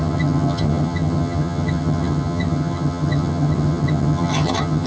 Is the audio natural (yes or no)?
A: no